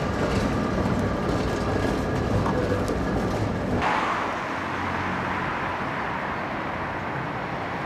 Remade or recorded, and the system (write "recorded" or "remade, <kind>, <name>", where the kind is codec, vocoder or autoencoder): recorded